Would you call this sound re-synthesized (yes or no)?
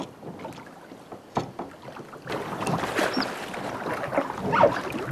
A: no